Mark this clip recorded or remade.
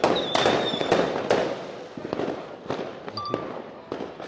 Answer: recorded